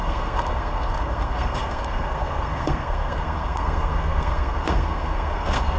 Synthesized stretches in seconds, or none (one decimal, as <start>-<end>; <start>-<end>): 0.0-5.8